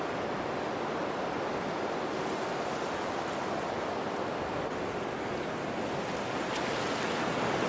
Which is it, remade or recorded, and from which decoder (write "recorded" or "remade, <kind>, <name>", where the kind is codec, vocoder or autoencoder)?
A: recorded